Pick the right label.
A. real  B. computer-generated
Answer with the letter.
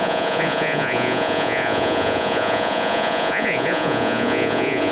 B